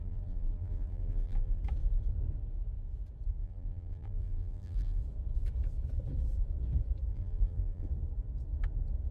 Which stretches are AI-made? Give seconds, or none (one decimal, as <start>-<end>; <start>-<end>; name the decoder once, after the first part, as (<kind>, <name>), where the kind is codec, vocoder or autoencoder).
0.0-1.6 (vocoder, BigVGAN v2); 3.4-5.0; 7.1-7.9